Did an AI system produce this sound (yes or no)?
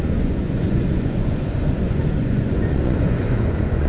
yes